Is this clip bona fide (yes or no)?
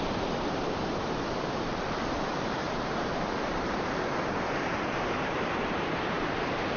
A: no